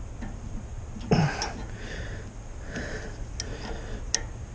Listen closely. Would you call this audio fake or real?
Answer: real